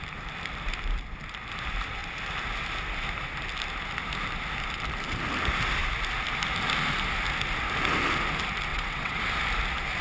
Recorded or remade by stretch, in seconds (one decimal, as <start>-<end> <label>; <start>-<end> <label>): 0.0-8.7 recorded; 8.7-9.2 remade; 9.2-10.0 recorded